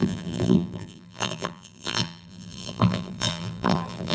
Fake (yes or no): yes